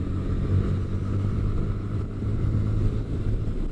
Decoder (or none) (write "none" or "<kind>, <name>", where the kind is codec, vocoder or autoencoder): vocoder, BigVGAN v2